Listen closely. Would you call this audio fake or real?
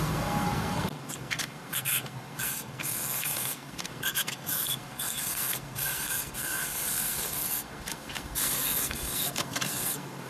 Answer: fake